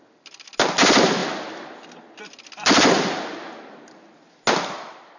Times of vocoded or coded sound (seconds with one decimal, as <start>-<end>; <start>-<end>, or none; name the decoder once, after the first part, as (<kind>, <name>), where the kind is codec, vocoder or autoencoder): none